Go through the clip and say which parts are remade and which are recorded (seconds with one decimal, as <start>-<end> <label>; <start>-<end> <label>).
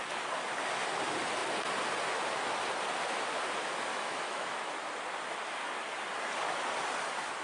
0.0-3.9 recorded; 3.9-4.7 remade; 4.7-7.4 recorded